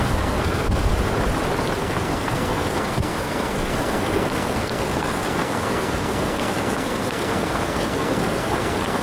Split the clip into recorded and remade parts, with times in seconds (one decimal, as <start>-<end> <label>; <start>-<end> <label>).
0.0-0.9 remade; 0.9-1.8 recorded; 1.8-9.0 remade